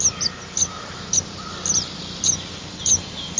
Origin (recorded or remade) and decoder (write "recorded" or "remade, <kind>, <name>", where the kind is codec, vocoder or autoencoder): recorded